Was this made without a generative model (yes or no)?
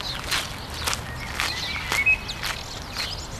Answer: yes